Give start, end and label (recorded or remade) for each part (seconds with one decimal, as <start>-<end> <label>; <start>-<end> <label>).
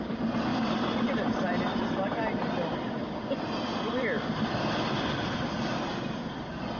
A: 0.0-6.8 remade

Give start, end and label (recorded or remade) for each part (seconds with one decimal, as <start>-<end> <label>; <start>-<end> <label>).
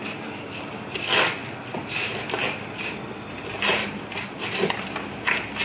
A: 0.0-5.6 recorded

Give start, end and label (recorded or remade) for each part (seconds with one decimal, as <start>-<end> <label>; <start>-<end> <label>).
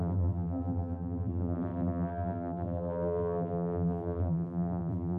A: 0.0-5.2 remade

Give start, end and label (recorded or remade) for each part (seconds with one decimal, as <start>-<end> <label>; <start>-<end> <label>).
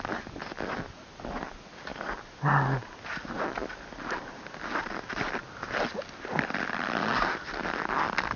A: 0.0-8.4 recorded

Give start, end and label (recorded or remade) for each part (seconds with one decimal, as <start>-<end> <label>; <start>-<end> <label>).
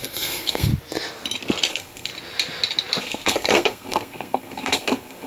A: 0.0-0.7 remade; 0.7-1.7 recorded; 1.7-2.1 remade; 2.1-3.0 recorded; 3.0-5.3 remade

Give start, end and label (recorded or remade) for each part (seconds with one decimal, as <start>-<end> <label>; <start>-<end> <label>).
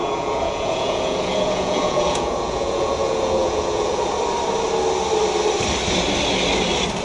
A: 0.0-4.0 remade; 4.0-7.0 recorded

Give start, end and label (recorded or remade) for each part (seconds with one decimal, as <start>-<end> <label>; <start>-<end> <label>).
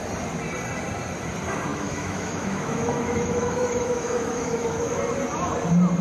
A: 0.0-1.7 recorded; 1.7-5.0 remade; 5.0-6.0 recorded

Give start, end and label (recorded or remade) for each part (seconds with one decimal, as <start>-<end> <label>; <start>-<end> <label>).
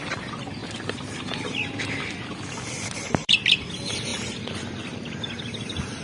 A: 0.0-0.6 remade; 0.6-2.5 recorded; 2.5-6.0 remade